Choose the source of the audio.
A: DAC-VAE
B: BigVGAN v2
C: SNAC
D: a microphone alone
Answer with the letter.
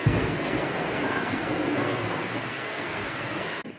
C